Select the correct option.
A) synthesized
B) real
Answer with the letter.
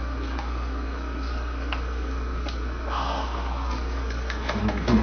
A